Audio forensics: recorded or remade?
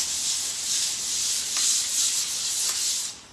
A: recorded